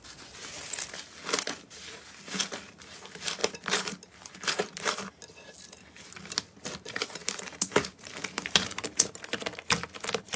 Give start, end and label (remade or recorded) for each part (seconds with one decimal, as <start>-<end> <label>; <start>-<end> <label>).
0.0-3.4 recorded; 3.4-5.1 remade; 5.1-7.2 recorded; 7.2-9.1 remade; 9.1-10.4 recorded